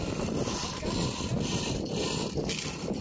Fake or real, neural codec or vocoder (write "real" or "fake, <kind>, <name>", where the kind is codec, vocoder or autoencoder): real